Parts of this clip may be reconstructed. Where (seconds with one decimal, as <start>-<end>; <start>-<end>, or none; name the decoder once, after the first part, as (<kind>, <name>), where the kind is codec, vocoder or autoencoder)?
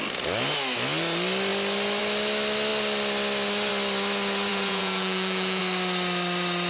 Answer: 4.5-5.6 (vocoder, Vocos)